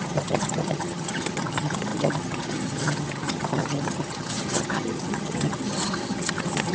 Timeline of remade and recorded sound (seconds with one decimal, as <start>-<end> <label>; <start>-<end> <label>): 0.0-6.7 remade